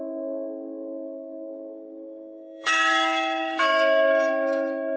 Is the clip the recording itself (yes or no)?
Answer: no